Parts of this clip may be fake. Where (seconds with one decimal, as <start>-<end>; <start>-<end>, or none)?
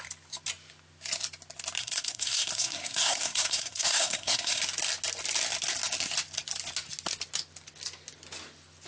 1.8-4.6